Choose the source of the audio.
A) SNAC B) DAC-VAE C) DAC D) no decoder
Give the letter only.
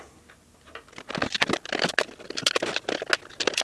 D